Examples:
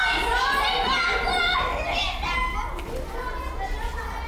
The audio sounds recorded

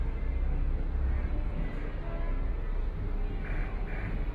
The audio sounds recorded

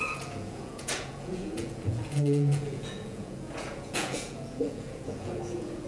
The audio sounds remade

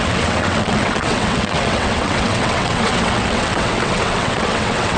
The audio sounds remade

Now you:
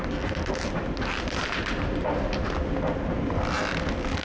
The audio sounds recorded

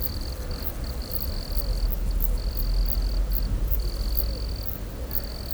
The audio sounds recorded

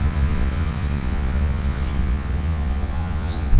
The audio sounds remade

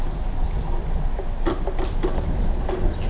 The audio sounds recorded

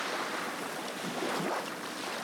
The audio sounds recorded